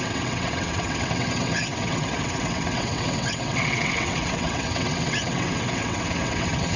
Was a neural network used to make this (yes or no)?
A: yes